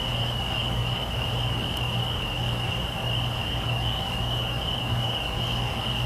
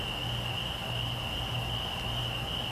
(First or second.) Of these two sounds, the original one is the second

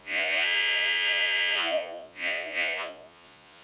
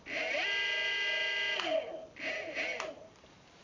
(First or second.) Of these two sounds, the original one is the second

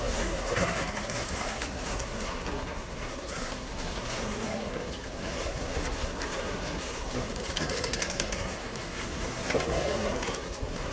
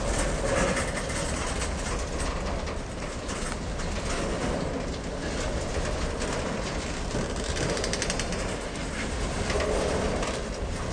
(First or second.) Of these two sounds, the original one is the second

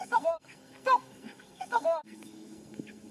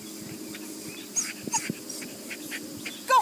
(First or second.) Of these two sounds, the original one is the second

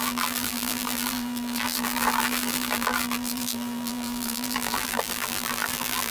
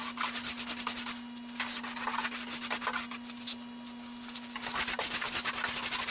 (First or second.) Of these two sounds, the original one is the second